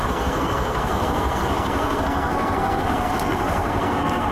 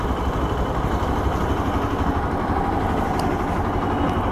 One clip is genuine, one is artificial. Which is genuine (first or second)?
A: second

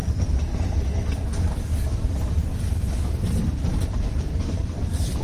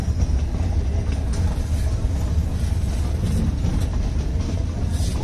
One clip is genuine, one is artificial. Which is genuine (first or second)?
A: second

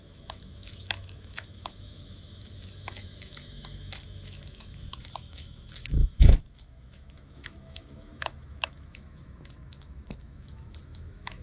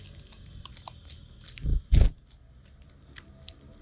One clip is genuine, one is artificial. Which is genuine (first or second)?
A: second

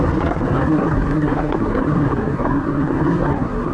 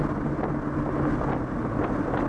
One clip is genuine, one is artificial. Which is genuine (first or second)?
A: second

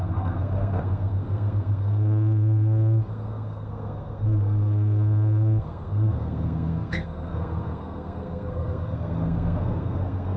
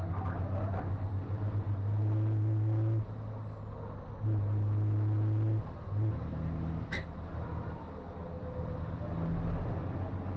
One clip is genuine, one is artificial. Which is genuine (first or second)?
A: second